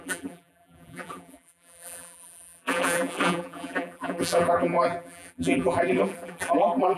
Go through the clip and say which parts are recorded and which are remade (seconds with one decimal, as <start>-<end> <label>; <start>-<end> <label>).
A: 0.0-7.0 remade